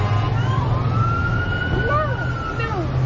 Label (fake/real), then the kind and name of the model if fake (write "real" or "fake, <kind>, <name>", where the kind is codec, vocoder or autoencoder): real